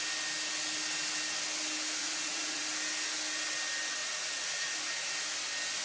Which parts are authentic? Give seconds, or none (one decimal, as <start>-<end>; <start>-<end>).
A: 0.0-2.0; 2.6-4.0; 5.1-5.8